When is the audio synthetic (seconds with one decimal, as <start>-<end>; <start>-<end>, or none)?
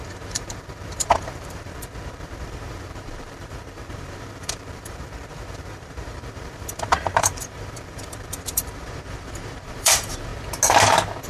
0.0-10.3